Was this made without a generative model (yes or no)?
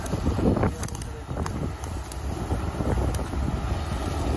yes